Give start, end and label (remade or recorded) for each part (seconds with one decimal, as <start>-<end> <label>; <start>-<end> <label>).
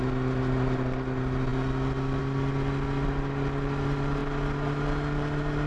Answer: 0.0-5.7 recorded